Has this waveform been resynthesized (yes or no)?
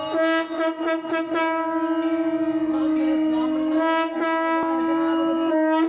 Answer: no